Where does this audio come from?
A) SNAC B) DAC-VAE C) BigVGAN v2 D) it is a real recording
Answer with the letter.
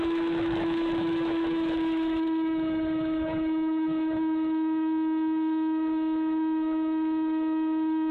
B